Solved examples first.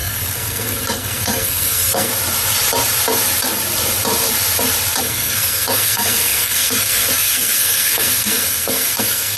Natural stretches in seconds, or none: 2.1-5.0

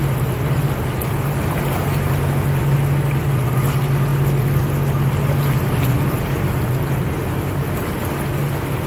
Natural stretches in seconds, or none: 0.0-8.9

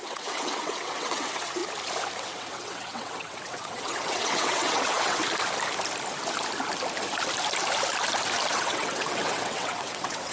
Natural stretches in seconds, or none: 1.6-2.2; 5.2-8.5